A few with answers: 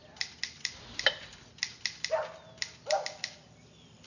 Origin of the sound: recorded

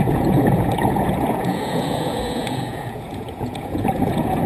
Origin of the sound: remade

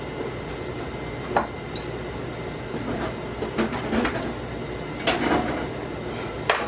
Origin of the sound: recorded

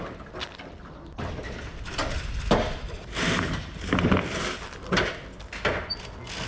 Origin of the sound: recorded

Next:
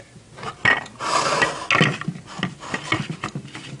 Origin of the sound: recorded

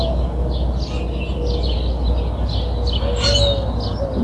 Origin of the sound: recorded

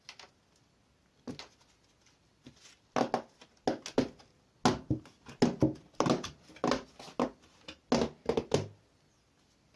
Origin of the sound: recorded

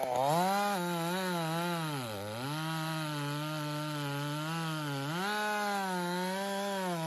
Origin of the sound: recorded